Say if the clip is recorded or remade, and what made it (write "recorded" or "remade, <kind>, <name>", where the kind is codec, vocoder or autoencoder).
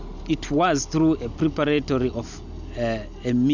recorded